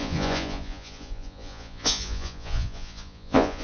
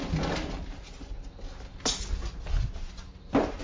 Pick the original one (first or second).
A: second